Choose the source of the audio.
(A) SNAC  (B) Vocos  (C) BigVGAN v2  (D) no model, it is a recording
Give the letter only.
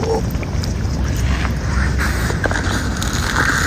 D